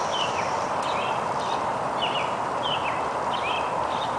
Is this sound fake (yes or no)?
no